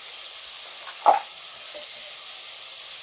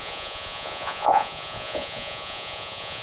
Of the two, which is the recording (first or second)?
first